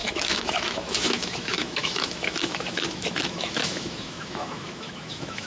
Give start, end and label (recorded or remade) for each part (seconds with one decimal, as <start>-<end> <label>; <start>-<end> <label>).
0.0-5.5 remade